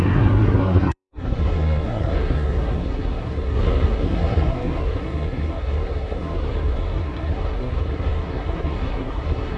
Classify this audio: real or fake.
fake